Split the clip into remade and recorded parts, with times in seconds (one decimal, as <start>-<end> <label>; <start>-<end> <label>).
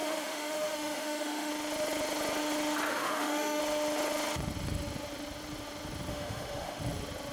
0.0-1.5 remade; 1.5-2.9 recorded; 2.9-3.6 remade; 3.6-6.1 recorded; 6.1-6.8 remade; 6.8-7.3 recorded